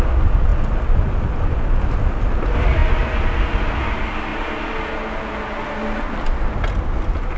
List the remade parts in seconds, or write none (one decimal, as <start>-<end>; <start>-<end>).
none